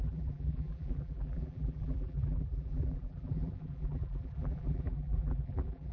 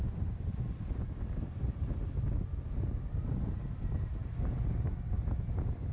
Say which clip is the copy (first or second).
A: first